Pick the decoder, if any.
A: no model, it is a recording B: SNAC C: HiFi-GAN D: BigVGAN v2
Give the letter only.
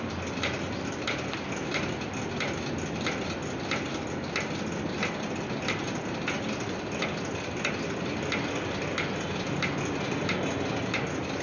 A